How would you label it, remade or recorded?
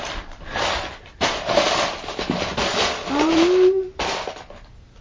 recorded